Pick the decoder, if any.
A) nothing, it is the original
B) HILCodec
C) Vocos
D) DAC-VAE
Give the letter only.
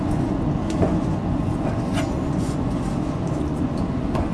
C